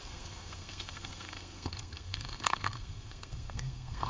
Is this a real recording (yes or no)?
no